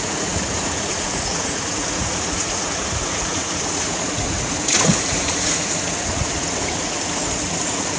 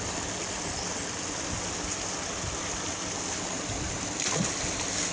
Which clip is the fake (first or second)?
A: first